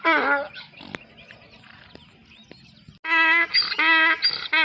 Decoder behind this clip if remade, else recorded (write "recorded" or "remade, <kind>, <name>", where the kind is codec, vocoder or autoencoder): recorded